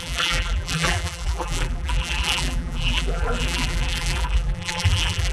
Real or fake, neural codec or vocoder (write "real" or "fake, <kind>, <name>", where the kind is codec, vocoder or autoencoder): fake, vocoder, BigVGAN v2